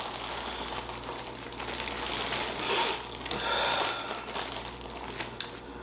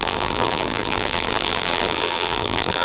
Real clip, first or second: first